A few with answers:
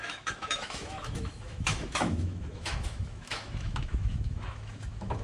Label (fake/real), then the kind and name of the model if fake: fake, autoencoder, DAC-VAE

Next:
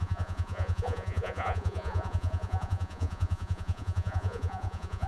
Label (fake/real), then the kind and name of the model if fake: fake, vocoder, Vocos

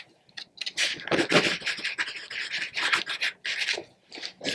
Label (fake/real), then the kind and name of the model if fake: real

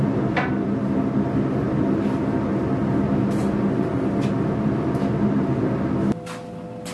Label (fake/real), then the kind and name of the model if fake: real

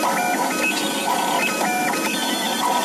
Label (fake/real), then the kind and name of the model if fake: real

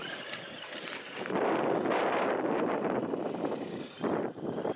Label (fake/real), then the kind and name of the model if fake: real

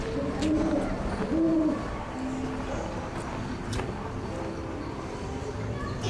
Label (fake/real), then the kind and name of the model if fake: real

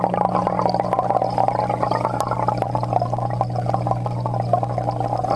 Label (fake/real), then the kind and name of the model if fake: real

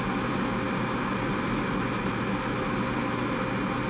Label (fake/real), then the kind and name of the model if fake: real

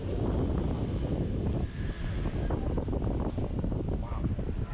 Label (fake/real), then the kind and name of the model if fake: real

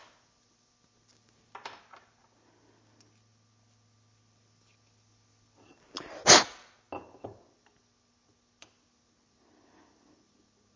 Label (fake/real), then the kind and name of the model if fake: real